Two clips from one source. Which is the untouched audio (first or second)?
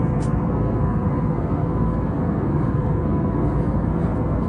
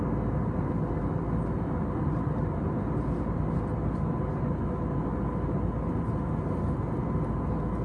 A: second